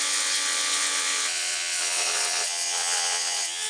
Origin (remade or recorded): remade